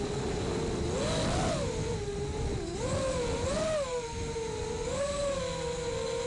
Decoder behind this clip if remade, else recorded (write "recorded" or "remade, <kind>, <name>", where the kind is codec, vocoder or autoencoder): recorded